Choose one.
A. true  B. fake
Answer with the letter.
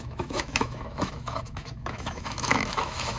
B